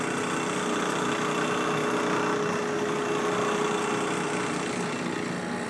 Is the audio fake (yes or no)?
no